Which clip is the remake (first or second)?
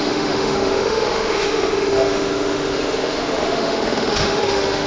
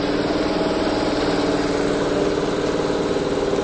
first